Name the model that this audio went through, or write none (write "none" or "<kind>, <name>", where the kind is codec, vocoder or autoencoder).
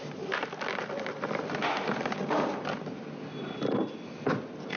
none